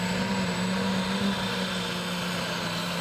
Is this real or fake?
real